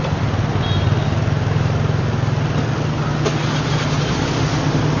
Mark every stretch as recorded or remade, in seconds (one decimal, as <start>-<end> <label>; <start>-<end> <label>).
0.0-5.0 recorded